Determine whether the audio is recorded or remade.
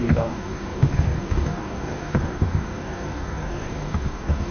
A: remade